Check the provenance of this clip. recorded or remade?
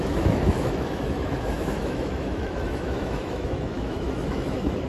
remade